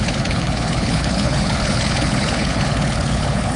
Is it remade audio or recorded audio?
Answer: remade